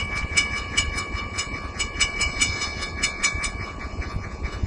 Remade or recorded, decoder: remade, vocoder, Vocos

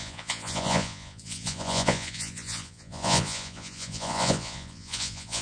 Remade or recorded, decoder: remade, vocoder, Vocos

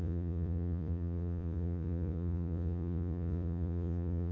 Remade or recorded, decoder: remade, vocoder, Vocos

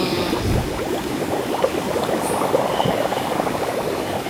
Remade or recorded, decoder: remade, codec, DAC